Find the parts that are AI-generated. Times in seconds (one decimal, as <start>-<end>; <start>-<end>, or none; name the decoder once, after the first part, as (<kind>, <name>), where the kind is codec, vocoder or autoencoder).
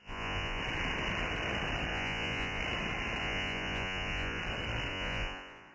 0.0-0.6 (vocoder, Vocos); 1.9-2.6; 3.2-4.4; 4.9-5.7